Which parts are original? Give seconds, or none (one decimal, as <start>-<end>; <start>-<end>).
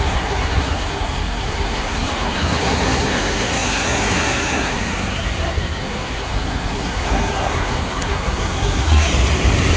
9.1-9.8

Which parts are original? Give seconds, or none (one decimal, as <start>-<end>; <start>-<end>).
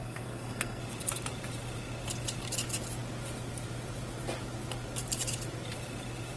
0.8-6.4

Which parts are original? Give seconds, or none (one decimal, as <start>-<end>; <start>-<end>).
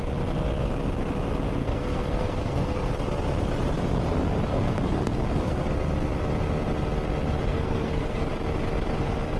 0.0-1.6; 2.9-4.5; 5.7-7.5; 8.3-9.4